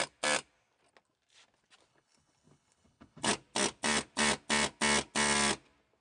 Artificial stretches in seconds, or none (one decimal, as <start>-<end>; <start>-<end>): 1.9-3.3